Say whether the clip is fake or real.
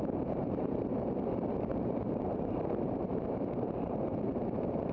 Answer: fake